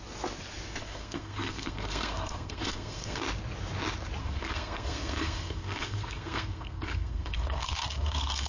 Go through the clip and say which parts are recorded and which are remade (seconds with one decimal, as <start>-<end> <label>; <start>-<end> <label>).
0.0-0.8 recorded; 0.8-3.2 remade; 3.2-4.2 recorded; 4.2-8.5 remade